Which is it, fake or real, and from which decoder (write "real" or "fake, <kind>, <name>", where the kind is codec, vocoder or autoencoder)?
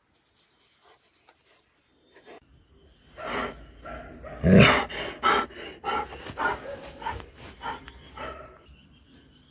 real